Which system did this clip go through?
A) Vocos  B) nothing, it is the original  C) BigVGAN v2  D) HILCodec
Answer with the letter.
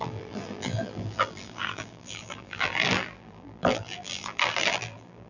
C